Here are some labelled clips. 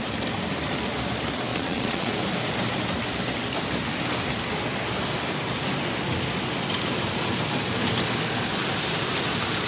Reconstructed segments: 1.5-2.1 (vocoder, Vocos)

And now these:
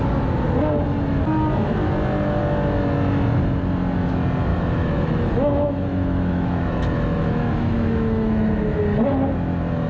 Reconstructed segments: 4.5-8.8 (autoencoder, DAC-VAE)

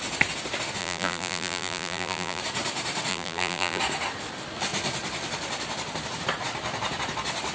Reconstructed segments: 0.8-2.4 (vocoder, BigVGAN v2); 3.1-3.8